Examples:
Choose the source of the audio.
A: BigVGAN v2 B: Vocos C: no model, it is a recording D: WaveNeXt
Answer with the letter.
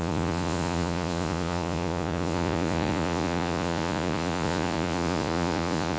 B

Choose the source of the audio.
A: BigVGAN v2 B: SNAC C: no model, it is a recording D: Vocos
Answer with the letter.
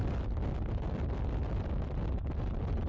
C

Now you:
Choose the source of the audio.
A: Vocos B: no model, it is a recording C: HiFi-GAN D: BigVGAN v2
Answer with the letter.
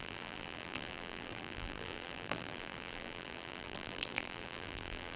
D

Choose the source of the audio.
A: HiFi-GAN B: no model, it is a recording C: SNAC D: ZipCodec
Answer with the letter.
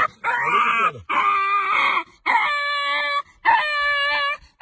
B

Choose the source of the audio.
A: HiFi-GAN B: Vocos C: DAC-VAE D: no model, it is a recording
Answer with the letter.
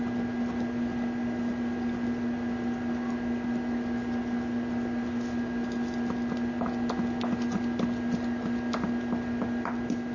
D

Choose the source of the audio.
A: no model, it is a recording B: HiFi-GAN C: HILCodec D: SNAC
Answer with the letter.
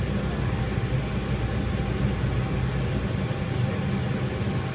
A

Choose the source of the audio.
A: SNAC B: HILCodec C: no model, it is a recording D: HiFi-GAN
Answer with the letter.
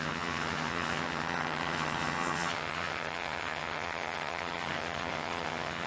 D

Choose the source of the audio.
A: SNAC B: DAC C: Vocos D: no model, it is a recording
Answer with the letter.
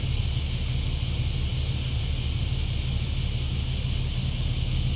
D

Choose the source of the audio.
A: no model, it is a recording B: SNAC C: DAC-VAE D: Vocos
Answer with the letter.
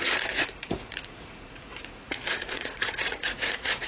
D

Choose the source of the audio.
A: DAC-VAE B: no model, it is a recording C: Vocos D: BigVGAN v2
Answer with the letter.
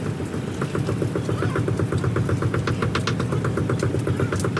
B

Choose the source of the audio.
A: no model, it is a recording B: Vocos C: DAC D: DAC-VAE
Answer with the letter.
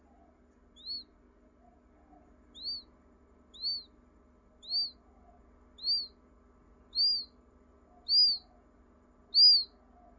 A